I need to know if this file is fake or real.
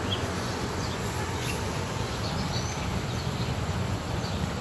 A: fake